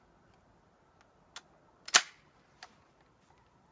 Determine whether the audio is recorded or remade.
recorded